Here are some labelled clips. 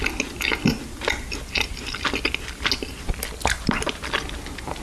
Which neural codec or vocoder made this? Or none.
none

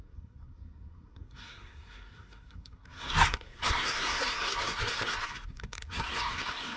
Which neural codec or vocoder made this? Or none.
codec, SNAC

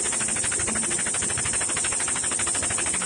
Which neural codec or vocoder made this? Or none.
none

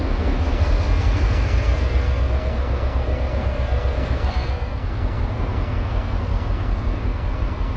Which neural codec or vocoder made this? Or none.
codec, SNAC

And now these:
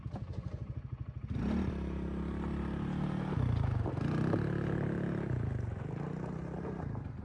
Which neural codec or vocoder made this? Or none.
none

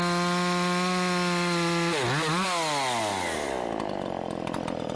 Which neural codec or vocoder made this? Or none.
none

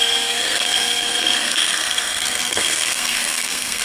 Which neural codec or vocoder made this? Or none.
codec, SNAC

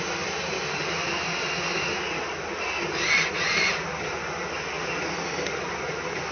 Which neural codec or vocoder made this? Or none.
none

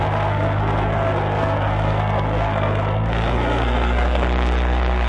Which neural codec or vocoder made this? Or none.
codec, SNAC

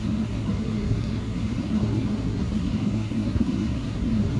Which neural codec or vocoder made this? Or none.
codec, SNAC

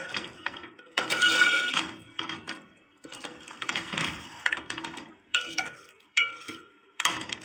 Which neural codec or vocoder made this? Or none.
codec, SNAC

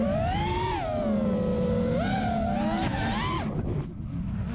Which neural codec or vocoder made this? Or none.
none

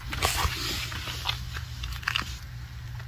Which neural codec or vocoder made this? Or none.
none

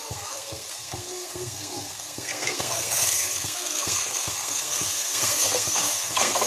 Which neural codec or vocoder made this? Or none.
codec, SNAC